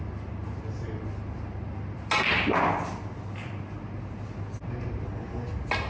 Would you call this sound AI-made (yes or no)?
no